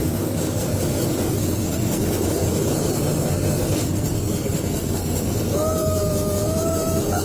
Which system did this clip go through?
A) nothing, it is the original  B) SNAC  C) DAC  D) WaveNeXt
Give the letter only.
B